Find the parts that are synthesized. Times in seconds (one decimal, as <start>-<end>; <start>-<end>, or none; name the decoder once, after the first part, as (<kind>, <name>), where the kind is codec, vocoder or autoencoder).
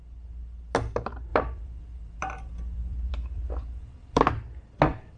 1.3-4.2 (vocoder, BigVGAN v2)